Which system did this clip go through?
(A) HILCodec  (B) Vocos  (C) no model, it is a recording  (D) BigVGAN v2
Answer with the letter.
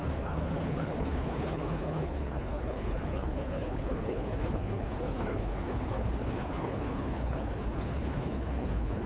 A